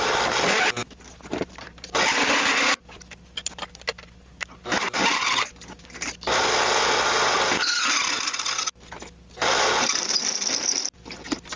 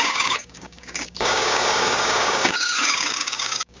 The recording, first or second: first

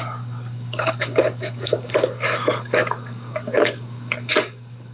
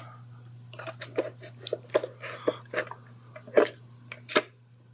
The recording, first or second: second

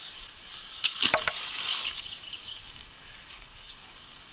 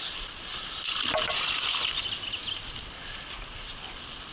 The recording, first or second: second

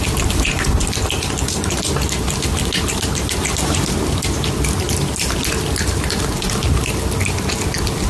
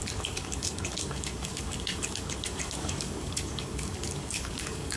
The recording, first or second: first